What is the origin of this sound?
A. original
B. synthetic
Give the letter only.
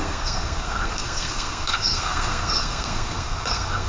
B